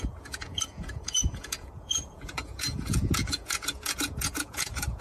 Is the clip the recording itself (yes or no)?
no